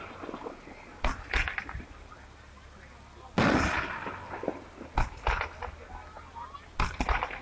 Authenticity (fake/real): real